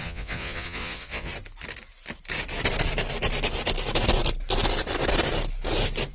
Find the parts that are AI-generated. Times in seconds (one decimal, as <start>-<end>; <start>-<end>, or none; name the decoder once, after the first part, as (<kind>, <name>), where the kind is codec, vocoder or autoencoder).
0.0-1.3 (vocoder, Vocos)